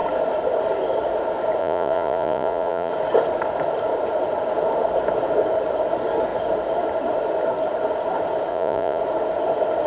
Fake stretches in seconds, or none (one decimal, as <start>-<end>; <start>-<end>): 1.6-2.9; 8.5-9.0